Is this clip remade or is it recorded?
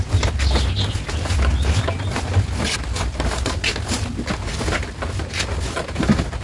recorded